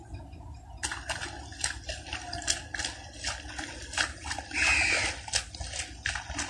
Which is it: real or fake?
real